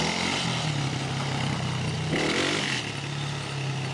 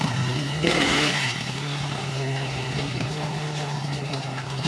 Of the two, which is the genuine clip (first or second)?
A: first